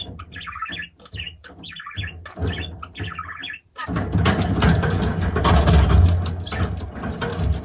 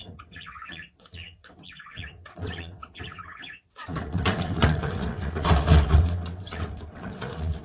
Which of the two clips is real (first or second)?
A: first